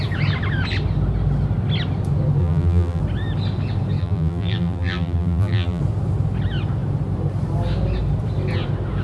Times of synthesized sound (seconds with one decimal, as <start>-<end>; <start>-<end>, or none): 2.4-3.0; 4.0-5.8